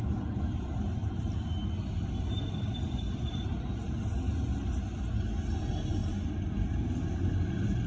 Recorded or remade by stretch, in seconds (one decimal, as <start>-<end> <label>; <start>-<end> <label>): 0.0-1.0 recorded; 1.0-3.9 remade; 3.9-6.0 recorded; 6.0-6.5 remade; 6.5-7.9 recorded

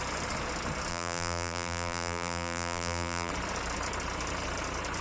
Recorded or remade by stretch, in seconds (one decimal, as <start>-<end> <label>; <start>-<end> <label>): 0.0-0.9 recorded; 0.9-3.3 remade; 3.3-5.0 recorded

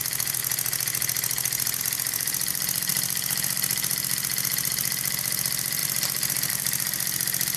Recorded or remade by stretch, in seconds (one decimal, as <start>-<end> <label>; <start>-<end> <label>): 0.0-0.4 remade; 0.4-1.8 recorded; 1.8-7.6 remade

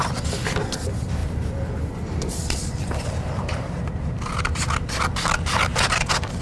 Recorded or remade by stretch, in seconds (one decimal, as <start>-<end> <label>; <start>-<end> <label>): 0.0-1.2 recorded; 1.2-5.0 remade; 5.0-5.7 recorded; 5.7-6.4 remade

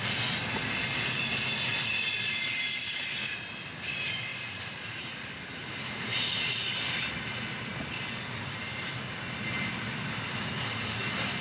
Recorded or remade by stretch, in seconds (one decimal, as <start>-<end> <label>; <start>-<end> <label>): 0.0-4.3 recorded; 4.3-4.8 remade; 4.8-11.4 recorded